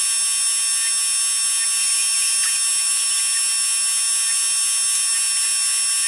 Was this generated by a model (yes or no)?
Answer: no